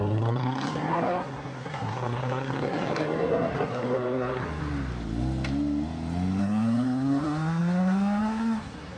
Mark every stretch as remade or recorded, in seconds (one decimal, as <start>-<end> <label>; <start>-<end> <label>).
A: 0.0-4.6 remade; 4.6-6.4 recorded; 6.4-9.0 remade

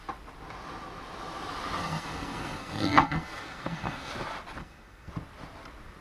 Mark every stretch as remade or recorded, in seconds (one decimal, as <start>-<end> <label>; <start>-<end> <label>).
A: 0.0-1.8 recorded; 1.8-4.1 remade; 4.1-4.6 recorded; 4.6-5.1 remade; 5.1-6.0 recorded

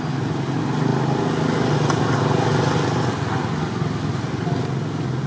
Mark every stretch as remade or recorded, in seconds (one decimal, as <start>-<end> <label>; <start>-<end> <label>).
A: 0.0-5.3 recorded

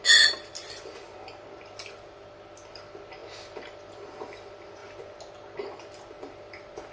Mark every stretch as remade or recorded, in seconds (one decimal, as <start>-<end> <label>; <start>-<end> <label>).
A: 0.0-6.9 recorded

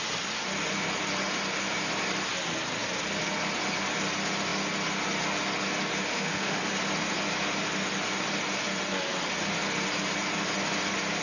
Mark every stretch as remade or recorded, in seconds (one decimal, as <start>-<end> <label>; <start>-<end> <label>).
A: 0.0-6.1 recorded; 6.1-6.6 remade; 6.6-11.2 recorded

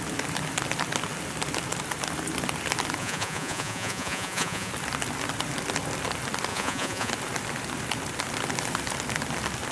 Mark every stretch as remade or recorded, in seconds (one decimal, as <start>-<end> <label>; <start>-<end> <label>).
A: 0.0-3.0 recorded; 3.0-4.7 remade; 4.7-6.5 recorded; 6.5-7.1 remade; 7.1-9.7 recorded

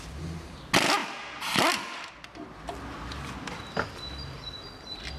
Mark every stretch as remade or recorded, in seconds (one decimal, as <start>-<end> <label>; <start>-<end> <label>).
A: 0.0-5.2 recorded